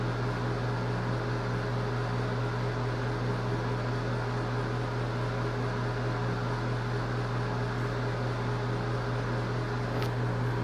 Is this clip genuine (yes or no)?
yes